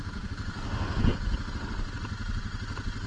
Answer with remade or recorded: recorded